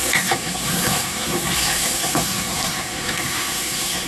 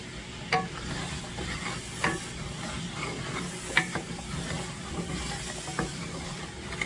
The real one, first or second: second